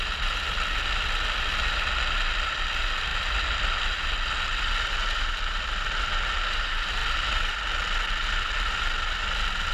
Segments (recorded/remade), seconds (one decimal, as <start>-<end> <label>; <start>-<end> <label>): 0.0-9.7 recorded